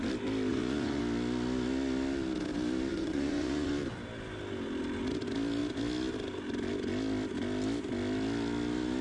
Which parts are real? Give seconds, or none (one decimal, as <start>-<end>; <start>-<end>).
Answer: 0.0-0.5; 1.0-2.9; 3.7-9.0